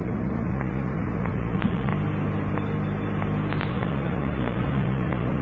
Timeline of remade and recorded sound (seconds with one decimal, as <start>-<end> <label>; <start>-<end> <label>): 0.0-1.9 remade; 1.9-3.7 recorded; 3.7-5.4 remade